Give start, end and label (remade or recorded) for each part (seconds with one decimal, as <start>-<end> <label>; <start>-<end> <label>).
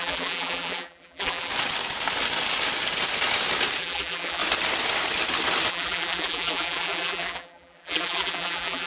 0.0-1.5 remade; 1.5-3.8 recorded; 3.8-4.4 remade; 4.4-5.7 recorded; 5.7-8.9 remade